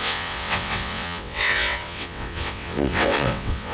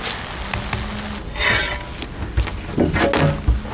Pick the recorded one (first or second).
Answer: second